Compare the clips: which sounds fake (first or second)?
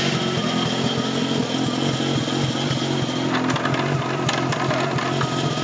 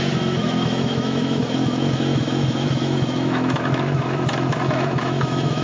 second